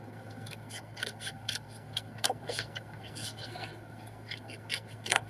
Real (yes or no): no